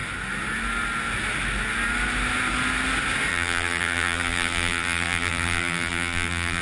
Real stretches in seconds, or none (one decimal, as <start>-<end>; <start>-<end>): 0.0-3.3

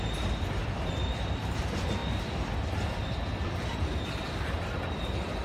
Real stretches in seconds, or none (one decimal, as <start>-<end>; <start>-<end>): 0.0-0.6; 1.6-5.4

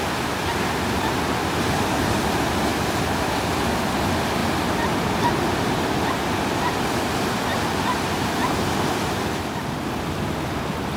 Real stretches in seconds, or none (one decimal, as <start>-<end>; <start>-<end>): 0.0-11.0

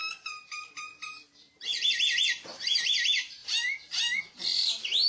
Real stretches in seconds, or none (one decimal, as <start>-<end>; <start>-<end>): 0.0-1.2

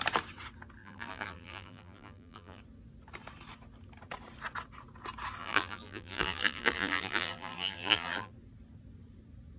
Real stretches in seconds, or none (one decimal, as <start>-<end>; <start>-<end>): 0.0-0.8; 2.6-5.4; 8.3-9.6